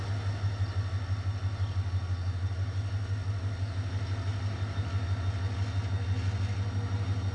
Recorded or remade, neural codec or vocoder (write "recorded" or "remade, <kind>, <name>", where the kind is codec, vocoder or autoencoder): recorded